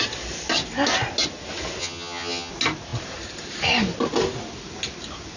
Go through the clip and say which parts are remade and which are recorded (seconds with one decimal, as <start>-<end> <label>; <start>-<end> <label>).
0.0-1.8 recorded; 1.8-2.5 remade; 2.5-5.4 recorded

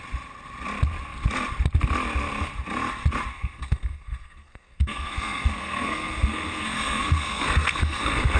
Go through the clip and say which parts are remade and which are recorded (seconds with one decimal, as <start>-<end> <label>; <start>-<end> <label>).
0.0-3.3 recorded; 3.3-8.4 remade

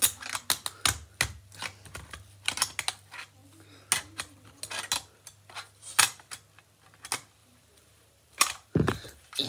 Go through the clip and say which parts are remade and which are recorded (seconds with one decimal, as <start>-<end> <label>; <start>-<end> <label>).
0.0-7.4 recorded; 7.4-9.5 remade

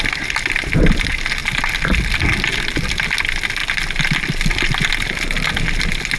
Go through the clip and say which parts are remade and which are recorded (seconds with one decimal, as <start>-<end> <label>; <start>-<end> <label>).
0.0-6.2 recorded

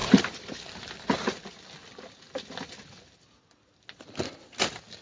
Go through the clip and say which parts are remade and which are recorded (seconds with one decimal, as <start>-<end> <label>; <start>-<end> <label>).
0.0-1.5 remade; 1.5-5.0 recorded

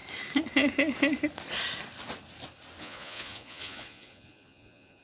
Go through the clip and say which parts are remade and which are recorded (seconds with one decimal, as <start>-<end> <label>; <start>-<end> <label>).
0.0-2.8 recorded; 2.8-5.0 remade

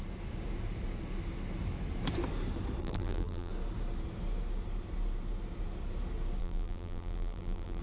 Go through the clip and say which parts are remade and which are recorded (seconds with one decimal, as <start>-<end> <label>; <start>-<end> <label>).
0.0-2.8 recorded; 2.8-3.5 remade; 3.5-6.4 recorded; 6.4-7.8 remade

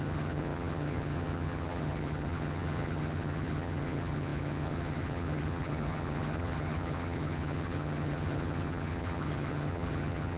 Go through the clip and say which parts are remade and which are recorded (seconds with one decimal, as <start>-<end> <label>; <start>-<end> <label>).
0.0-10.4 remade